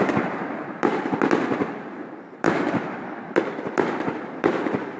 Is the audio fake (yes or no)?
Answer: yes